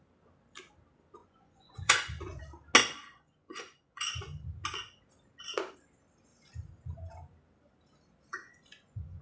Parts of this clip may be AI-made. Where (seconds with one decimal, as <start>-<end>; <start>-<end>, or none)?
1.2-2.4; 2.8-4.0; 8.3-9.2